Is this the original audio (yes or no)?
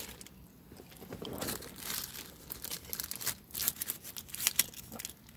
yes